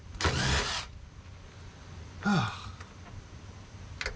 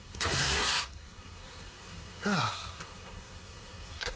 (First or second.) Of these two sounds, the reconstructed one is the second